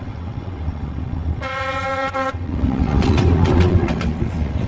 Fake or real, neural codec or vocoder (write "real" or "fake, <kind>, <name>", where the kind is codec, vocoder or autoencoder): fake, vocoder, WaveNeXt